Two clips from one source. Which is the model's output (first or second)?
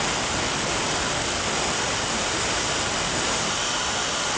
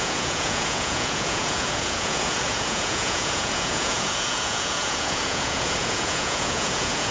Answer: second